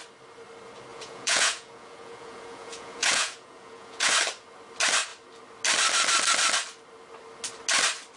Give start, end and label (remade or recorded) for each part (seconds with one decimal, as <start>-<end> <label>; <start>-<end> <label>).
0.0-0.9 recorded; 0.9-4.1 remade; 4.1-8.2 recorded